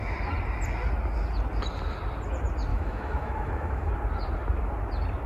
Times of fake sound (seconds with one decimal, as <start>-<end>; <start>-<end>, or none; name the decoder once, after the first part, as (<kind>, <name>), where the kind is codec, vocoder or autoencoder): 2.7-3.9 (autoencoder, DAC-VAE)